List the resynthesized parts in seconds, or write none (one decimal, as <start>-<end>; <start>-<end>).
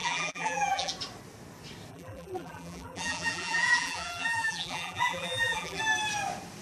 0.0-0.9; 1.9-5.8